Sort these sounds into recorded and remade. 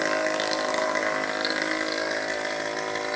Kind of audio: recorded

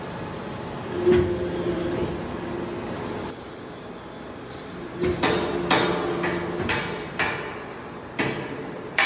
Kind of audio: recorded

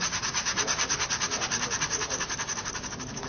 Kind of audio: remade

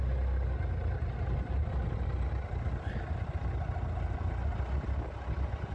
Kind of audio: recorded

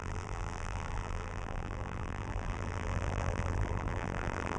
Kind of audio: remade